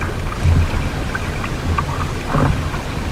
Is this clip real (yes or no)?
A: yes